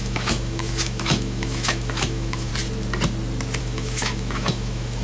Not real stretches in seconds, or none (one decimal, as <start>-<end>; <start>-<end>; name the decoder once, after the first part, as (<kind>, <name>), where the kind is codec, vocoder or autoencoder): 0.0-2.5 (autoencoder, DAC-VAE); 3.6-5.0